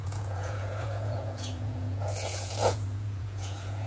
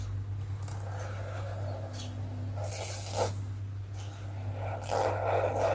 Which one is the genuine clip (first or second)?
second